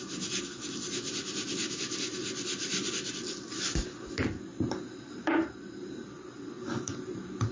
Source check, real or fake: real